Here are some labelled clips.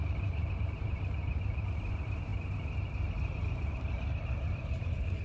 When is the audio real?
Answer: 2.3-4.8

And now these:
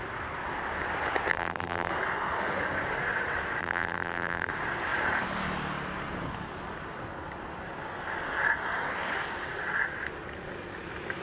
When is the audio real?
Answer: 0.0-1.3; 1.9-3.6; 4.5-11.2

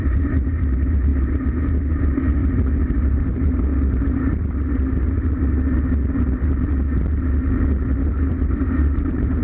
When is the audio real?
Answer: 1.1-1.7; 2.4-2.9; 3.7-8.1

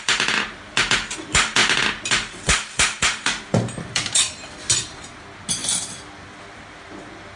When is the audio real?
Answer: 0.0-1.6; 4.5-5.6

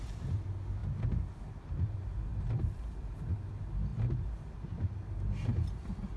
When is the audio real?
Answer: 0.0-2.3; 3.3-6.2

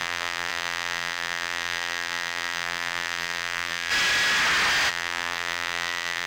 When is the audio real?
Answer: 3.9-4.9

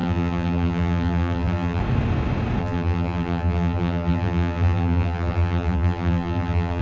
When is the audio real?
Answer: 1.8-2.6